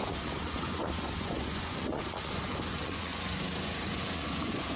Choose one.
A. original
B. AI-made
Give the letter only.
B